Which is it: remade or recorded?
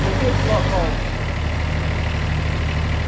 recorded